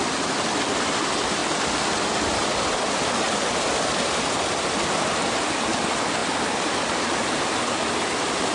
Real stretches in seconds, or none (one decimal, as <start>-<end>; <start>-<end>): 0.0-8.5